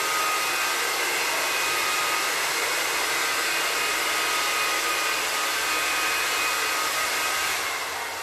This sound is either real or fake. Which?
real